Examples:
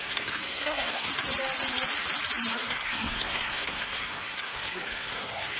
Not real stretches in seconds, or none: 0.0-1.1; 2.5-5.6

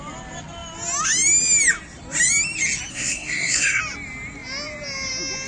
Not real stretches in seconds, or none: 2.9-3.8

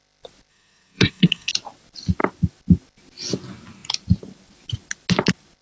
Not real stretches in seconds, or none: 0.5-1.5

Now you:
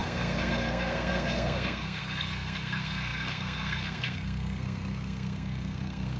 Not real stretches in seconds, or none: 0.0-6.2

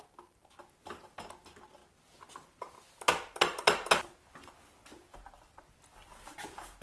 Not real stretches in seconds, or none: none

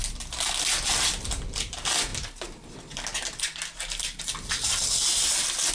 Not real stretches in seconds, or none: none

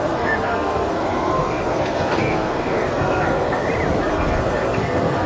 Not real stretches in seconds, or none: 0.0-3.6; 4.1-5.3

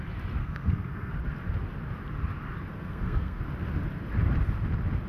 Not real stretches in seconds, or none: 0.4-1.1; 2.7-3.4